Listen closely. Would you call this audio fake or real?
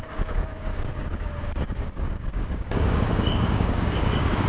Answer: fake